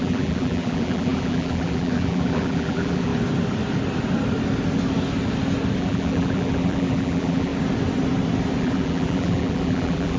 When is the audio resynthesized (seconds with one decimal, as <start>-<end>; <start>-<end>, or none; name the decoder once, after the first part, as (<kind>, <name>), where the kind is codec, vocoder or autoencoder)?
0.0-3.1 (vocoder, BigVGAN v2); 5.8-7.5; 8.6-10.2